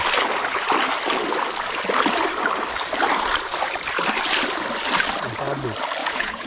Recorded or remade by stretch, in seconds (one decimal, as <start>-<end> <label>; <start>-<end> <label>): 0.0-6.0 recorded; 6.0-6.5 remade